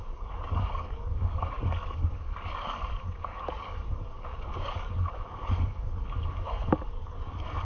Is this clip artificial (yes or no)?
yes